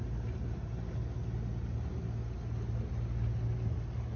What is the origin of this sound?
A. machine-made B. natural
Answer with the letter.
B